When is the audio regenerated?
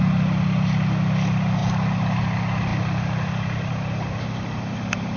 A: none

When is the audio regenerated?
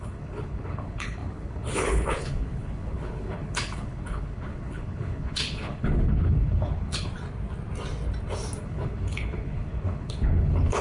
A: 0.0-7.1 (codec, HILCodec); 8.6-10.8